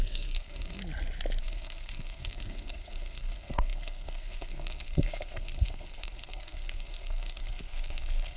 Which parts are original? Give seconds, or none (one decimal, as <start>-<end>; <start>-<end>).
0.8-1.4